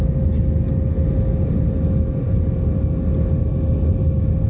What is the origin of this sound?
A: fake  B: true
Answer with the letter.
B